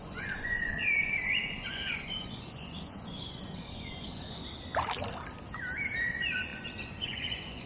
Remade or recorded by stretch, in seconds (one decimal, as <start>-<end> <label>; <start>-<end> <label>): 0.0-4.4 remade; 4.4-6.1 recorded; 6.1-7.7 remade